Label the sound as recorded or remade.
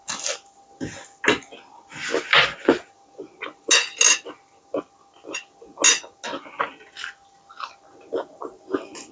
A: recorded